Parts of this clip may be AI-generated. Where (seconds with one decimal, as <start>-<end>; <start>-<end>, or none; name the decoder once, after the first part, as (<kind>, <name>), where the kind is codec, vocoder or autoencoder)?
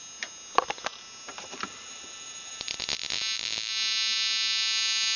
1.3-2.8 (vocoder, BigVGAN v2)